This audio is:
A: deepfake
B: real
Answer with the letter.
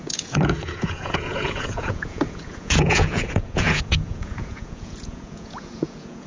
A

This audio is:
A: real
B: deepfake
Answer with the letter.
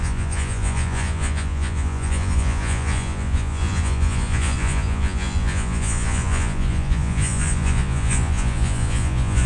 B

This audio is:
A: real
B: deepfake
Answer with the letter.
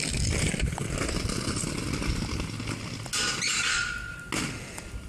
A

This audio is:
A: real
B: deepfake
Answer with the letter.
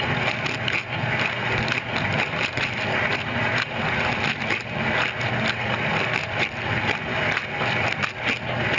A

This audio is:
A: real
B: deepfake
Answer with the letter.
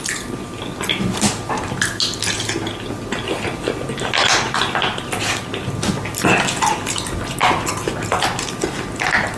A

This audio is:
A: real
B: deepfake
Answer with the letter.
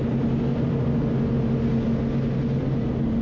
A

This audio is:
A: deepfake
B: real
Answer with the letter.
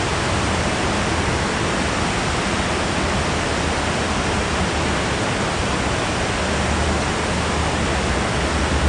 B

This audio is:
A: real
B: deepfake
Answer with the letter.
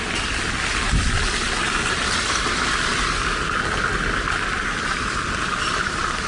A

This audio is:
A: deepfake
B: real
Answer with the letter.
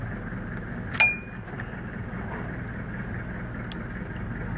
B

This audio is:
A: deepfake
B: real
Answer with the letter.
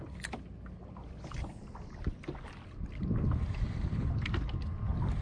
B